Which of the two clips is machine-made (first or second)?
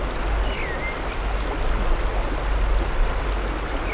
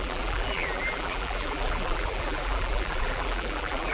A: second